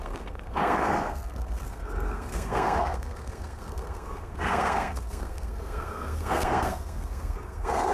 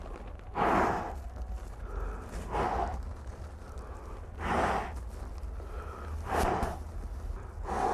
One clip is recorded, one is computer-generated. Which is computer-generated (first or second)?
first